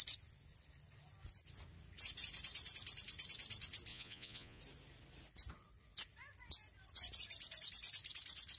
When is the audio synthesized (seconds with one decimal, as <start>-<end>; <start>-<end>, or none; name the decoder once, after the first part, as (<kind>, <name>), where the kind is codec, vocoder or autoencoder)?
3.9-4.6 (vocoder, Vocos)